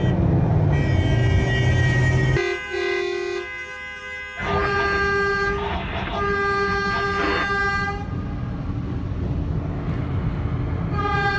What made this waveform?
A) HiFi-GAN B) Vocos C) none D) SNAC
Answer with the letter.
C